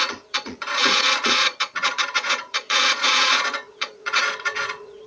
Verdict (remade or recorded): remade